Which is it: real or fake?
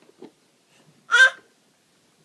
real